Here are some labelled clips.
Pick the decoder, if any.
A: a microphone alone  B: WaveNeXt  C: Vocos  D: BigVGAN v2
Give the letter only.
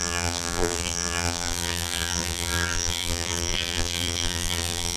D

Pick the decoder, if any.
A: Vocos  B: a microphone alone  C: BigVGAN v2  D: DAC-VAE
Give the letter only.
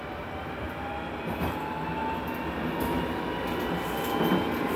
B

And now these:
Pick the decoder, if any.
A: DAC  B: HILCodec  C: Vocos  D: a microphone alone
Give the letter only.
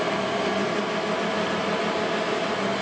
D